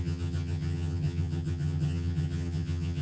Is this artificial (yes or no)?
yes